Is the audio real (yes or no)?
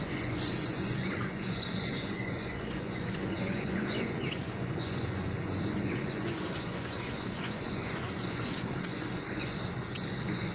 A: no